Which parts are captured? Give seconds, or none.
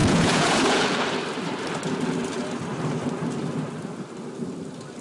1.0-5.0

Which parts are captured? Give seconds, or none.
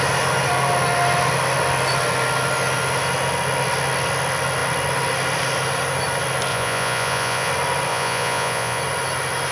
0.0-6.5; 7.5-7.9; 8.8-9.5